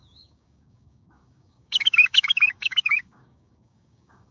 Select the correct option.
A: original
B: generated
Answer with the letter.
B